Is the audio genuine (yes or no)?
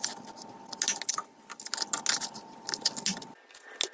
yes